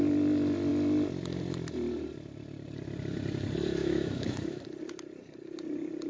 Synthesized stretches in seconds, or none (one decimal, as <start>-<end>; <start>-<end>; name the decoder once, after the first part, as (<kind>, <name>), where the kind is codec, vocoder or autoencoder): 3.8-4.6 (autoencoder, DAC-VAE)